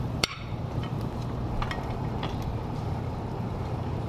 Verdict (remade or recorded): remade